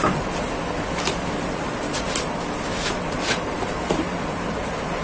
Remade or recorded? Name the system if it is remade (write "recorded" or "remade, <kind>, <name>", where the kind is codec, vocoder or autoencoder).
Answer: recorded